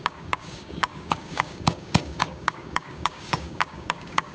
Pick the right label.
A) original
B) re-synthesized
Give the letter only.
B